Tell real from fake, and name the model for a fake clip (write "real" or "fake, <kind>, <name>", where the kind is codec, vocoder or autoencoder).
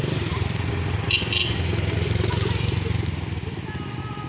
real